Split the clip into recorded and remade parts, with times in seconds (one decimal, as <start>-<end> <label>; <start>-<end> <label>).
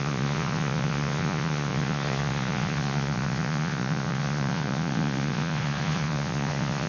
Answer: 0.0-6.9 remade